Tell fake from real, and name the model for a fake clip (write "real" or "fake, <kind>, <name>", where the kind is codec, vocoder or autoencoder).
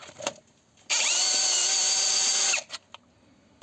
real